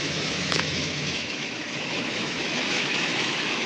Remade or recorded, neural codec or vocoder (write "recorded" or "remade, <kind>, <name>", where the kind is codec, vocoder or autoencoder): remade, autoencoder, DAC-VAE